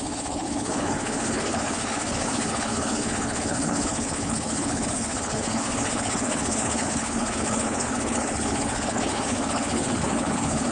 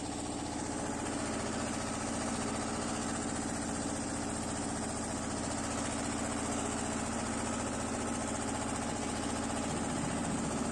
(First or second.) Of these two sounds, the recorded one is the second